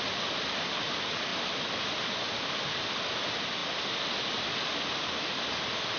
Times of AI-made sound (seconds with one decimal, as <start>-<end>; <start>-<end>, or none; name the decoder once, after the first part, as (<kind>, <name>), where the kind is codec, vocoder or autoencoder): none